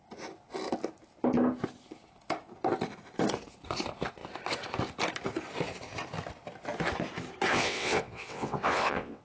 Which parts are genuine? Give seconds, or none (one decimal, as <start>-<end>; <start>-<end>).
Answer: 0.0-7.5